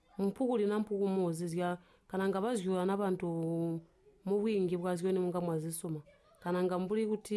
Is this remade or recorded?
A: recorded